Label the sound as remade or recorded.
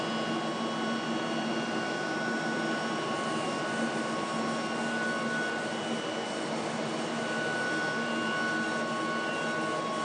recorded